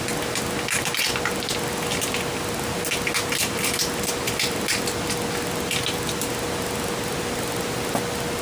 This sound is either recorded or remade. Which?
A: recorded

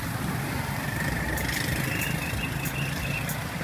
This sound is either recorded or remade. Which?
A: recorded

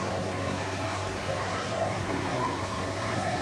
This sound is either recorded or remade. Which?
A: remade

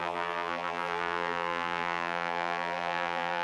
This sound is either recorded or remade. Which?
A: remade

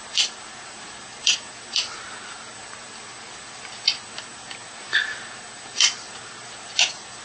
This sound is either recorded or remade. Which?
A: remade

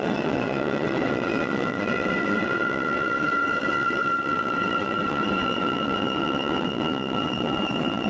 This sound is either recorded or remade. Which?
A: remade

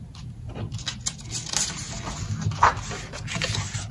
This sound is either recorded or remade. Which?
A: recorded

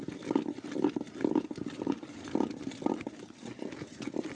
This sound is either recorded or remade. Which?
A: recorded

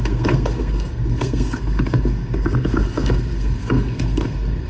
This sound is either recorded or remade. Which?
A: remade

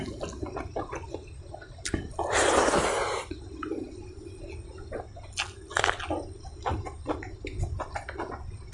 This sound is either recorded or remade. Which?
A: recorded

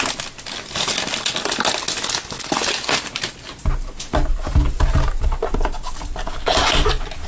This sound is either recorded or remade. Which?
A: recorded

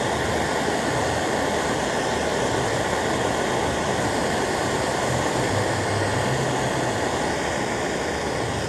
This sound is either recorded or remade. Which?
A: recorded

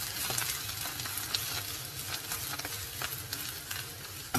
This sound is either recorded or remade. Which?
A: recorded